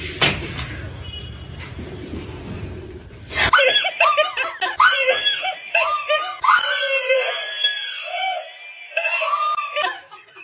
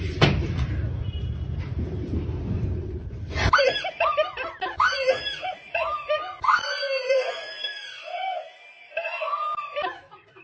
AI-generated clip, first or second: second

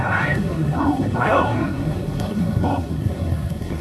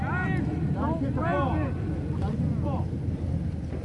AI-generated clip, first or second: first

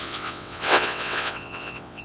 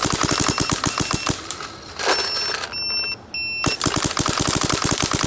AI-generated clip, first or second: first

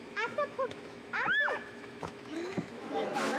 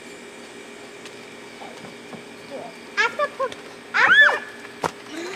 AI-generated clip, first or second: first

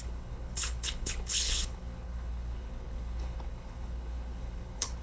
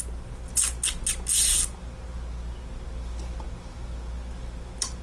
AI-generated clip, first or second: first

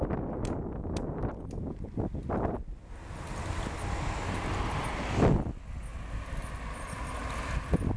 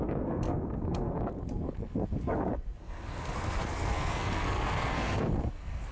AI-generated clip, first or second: second